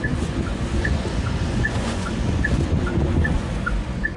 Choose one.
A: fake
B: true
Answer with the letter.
A